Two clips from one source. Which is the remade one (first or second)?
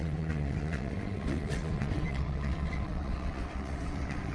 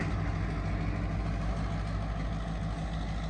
first